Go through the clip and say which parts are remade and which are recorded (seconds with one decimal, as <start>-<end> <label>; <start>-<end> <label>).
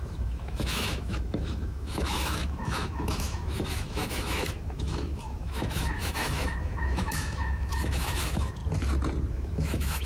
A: 0.0-8.6 remade; 8.6-9.3 recorded; 9.3-10.1 remade